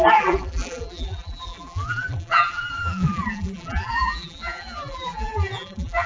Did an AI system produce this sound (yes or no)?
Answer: yes